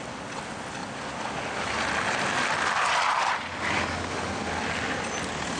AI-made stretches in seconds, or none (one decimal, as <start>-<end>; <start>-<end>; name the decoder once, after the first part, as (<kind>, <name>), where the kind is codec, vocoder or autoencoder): none